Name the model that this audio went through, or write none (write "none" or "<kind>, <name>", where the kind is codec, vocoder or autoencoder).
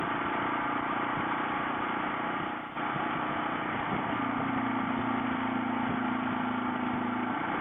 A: none